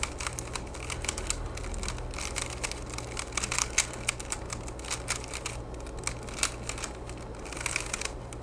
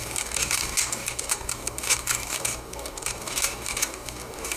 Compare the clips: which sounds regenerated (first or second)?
second